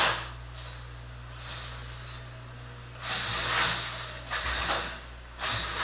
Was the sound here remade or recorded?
recorded